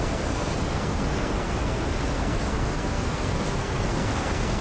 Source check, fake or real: fake